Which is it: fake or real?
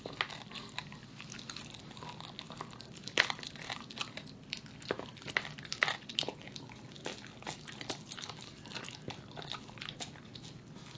real